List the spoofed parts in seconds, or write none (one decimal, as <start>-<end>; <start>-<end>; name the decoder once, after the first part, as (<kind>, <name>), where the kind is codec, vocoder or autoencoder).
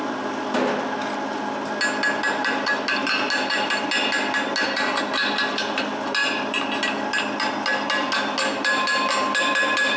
none